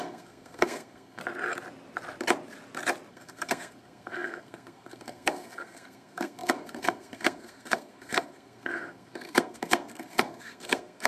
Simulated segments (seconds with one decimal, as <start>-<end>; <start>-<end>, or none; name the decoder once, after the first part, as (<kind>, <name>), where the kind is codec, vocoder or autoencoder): 0.0-1.2 (codec, SNAC); 3.1-11.1